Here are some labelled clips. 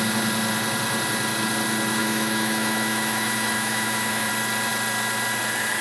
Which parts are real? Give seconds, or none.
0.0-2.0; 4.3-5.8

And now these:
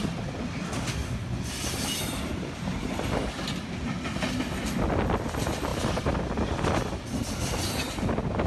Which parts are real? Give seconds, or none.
0.0-1.0; 1.5-8.5

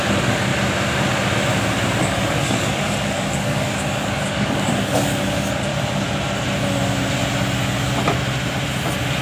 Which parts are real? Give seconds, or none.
0.5-2.0; 5.7-9.2

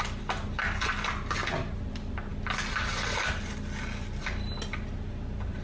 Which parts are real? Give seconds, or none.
0.0-5.6